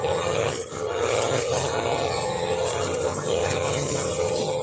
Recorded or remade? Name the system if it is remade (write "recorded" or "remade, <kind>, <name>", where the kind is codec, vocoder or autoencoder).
remade, vocoder, HiFi-GAN